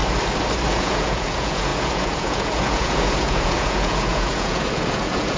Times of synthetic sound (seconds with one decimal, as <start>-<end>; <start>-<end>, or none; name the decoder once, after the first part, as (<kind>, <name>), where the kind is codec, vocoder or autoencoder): 0.7-5.4 (vocoder, Vocos)